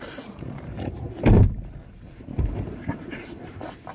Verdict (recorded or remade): remade